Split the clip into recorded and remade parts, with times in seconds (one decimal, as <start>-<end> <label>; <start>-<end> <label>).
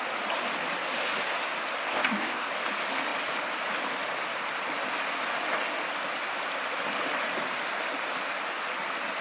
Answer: 0.0-1.8 recorded; 1.8-2.5 remade; 2.5-9.2 recorded